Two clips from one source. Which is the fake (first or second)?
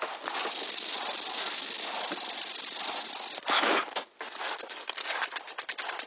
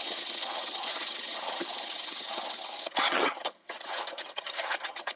second